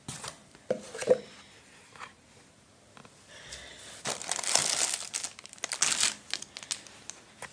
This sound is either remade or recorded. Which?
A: recorded